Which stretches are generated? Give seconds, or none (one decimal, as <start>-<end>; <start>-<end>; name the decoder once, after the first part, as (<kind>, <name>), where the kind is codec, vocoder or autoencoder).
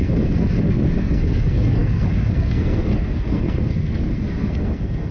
0.0-5.1 (codec, SNAC)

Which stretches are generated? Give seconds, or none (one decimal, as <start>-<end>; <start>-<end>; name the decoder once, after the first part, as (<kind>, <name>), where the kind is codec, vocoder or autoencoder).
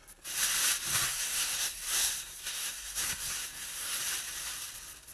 0.9-4.0 (codec, SNAC)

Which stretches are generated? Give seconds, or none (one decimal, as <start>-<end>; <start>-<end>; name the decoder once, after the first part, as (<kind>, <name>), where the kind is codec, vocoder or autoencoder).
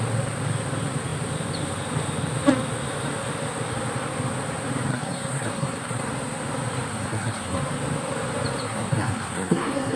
4.9-6.0 (codec, SNAC); 6.9-7.6; 8.6-10.0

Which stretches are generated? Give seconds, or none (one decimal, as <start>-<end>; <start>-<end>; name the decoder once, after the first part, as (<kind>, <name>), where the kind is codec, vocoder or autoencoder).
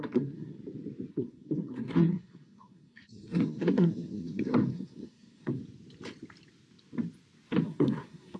0.0-0.6 (codec, SNAC); 1.1-5.6; 7.6-8.4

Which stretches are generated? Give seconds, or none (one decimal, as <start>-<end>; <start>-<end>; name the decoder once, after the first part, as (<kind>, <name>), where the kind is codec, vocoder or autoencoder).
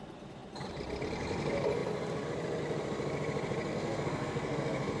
3.7-5.0 (codec, SNAC)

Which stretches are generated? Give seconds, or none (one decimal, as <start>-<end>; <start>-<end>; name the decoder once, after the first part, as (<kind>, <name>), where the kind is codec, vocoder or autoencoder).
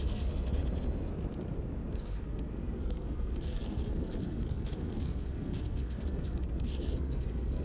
0.0-0.6 (codec, SNAC); 1.9-7.6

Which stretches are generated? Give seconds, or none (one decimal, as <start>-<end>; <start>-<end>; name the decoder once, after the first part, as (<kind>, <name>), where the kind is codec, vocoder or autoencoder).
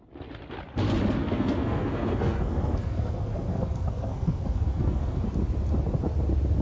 1.2-5.2 (codec, SNAC)